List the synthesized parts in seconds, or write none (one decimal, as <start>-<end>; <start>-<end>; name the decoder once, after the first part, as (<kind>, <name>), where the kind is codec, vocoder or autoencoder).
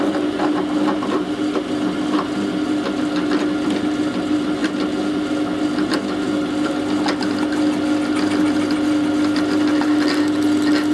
none